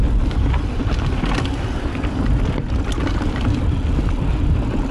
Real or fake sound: real